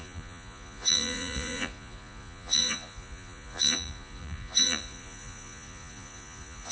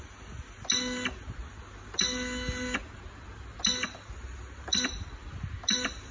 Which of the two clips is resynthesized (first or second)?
first